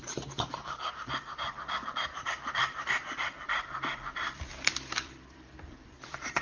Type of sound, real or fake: fake